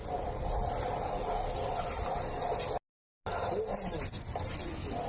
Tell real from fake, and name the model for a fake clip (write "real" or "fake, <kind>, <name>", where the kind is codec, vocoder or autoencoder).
real